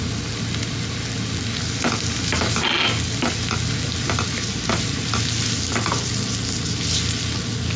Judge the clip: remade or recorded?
recorded